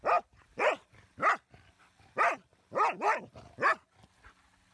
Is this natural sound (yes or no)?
yes